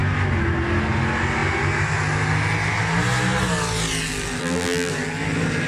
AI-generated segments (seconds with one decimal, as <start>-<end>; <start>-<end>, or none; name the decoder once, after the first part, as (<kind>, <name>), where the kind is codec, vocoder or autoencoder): 4.4-4.9 (vocoder, BigVGAN v2)